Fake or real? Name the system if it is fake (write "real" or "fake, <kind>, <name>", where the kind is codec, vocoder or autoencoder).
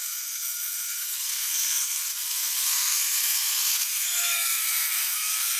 fake, codec, SNAC